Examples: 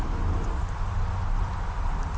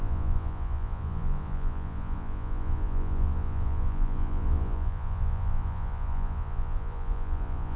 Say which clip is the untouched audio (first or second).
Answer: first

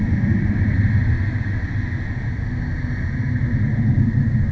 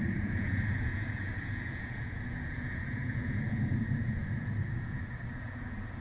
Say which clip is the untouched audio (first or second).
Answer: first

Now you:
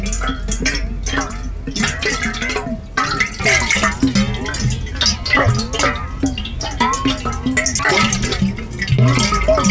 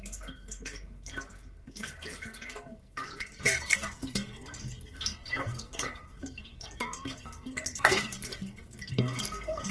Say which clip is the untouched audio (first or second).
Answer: first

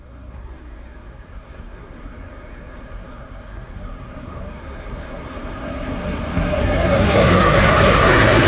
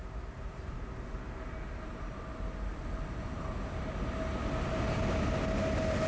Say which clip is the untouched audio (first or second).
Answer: second